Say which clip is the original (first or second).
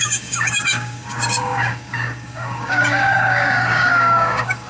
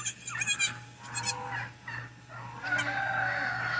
second